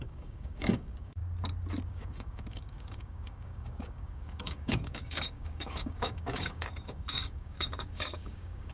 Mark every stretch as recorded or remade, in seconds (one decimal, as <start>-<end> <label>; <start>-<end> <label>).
0.0-1.2 remade; 1.2-1.9 recorded; 1.9-8.7 remade

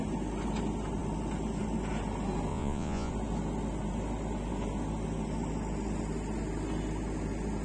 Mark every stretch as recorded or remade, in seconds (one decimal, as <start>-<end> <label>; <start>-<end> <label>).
0.0-2.5 recorded; 2.5-3.1 remade; 3.1-7.6 recorded

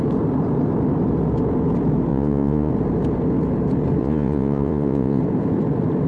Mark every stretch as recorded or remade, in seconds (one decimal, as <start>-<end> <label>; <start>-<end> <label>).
0.0-2.1 recorded; 2.1-2.7 remade; 2.7-4.0 recorded; 4.0-5.2 remade; 5.2-6.1 recorded

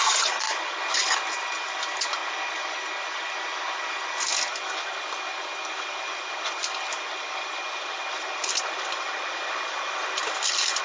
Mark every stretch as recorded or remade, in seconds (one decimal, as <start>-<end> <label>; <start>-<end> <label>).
0.0-10.8 recorded

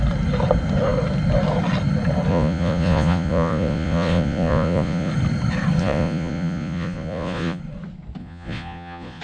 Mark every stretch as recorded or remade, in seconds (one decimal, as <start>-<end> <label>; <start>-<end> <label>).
0.0-2.3 recorded; 2.3-5.1 remade; 5.1-5.8 recorded; 5.8-7.6 remade; 7.6-8.2 recorded; 8.2-9.2 remade

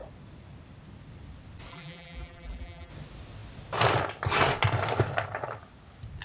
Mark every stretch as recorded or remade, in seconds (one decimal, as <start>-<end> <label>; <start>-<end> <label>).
0.0-1.7 recorded; 1.7-2.9 remade; 2.9-6.2 recorded

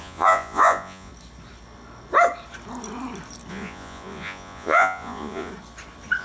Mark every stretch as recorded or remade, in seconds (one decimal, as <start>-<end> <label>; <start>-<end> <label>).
0.0-1.1 remade; 1.1-3.5 recorded; 3.5-5.5 remade; 5.5-6.2 recorded

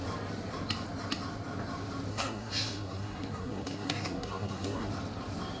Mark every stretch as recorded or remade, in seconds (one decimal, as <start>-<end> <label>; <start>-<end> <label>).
0.0-2.1 recorded; 2.1-4.9 remade; 4.9-5.6 recorded